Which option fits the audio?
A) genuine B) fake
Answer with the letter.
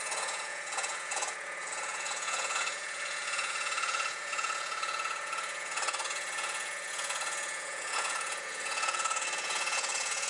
B